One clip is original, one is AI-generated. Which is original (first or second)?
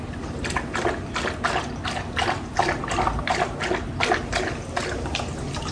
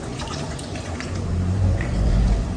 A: first